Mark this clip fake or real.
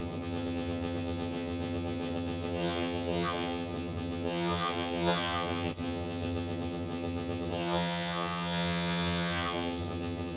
fake